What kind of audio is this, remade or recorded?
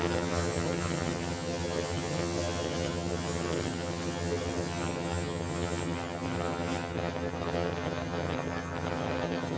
remade